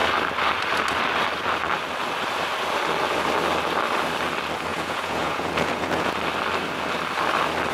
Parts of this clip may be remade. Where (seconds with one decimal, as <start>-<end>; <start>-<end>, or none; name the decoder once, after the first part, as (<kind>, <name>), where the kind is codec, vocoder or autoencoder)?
4.7-6.1 (vocoder, Vocos)

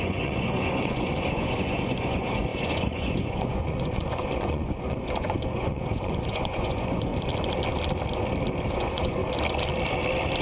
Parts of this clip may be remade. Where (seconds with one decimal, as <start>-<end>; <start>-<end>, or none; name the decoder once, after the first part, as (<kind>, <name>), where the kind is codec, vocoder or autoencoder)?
0.0-7.1 (vocoder, Vocos); 8.7-9.2